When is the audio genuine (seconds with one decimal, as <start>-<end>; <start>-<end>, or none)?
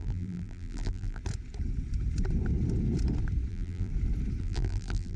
1.2-3.5; 3.9-4.4